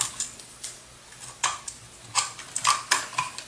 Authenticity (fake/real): real